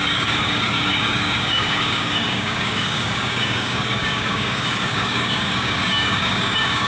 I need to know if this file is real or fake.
fake